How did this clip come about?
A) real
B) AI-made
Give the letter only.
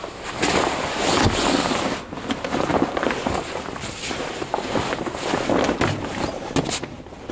A